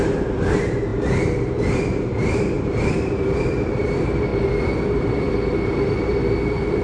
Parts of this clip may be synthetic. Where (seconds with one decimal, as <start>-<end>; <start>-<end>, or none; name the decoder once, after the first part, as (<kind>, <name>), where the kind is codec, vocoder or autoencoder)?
0.0-4.3 (vocoder, BigVGAN v2); 5.0-6.8